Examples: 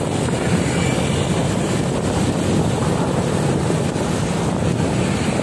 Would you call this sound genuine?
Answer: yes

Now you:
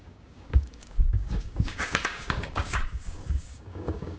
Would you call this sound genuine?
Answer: no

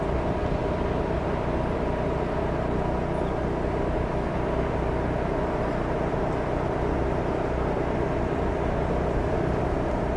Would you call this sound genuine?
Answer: no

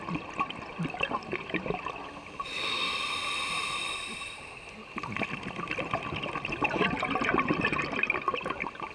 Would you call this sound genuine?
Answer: yes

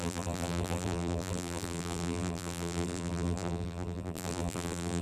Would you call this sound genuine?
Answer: no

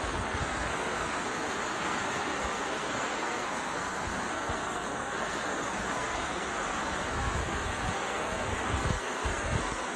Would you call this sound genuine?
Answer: no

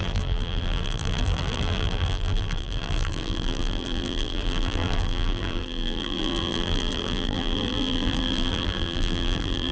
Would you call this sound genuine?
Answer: no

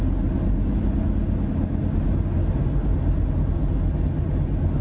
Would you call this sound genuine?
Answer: yes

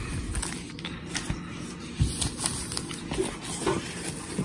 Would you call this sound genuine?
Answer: yes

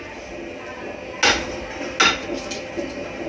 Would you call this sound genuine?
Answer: yes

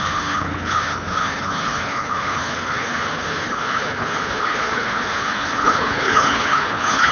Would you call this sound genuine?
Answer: no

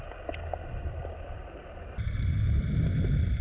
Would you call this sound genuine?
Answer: yes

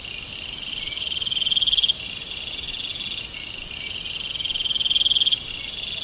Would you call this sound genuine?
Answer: yes